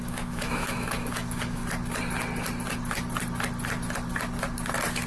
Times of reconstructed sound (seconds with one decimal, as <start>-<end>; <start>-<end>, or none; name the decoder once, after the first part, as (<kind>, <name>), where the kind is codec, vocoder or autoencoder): 0.0-1.6 (autoencoder, DAC-VAE)